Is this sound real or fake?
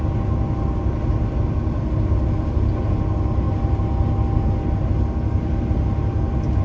real